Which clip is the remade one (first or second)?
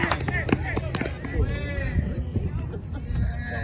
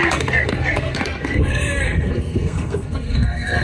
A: second